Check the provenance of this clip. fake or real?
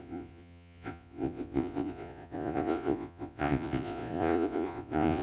fake